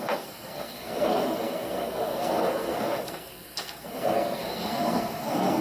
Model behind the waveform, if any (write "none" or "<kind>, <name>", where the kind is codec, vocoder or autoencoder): codec, SNAC